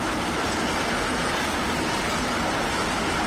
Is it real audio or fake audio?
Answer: real